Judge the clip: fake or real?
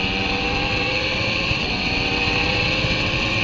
fake